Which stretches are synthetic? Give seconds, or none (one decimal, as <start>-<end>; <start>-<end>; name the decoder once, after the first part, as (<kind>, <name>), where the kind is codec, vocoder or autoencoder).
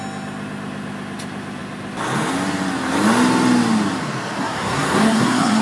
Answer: 4.4-5.6 (codec, SNAC)